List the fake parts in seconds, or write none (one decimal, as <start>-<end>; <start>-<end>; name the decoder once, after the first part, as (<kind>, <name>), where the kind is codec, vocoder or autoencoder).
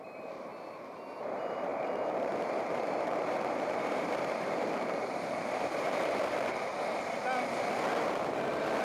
0.0-0.5 (vocoder, BigVGAN v2); 1.2-6.7; 8.2-8.8